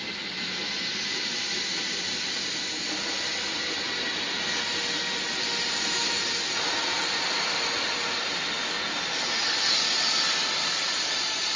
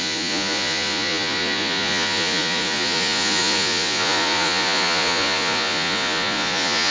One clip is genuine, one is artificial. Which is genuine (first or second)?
first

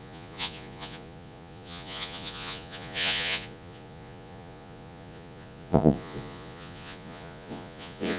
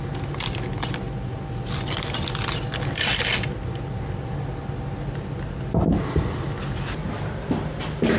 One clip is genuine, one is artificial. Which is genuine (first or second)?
second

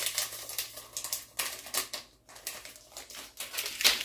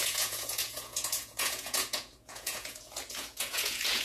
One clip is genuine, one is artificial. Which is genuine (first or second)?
first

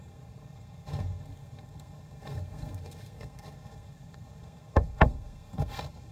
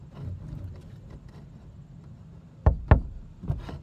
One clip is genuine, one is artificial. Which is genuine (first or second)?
second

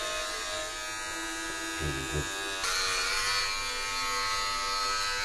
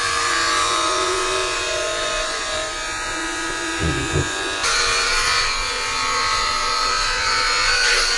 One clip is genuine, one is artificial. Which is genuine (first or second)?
first